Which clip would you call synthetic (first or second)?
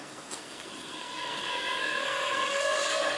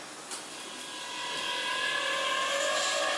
first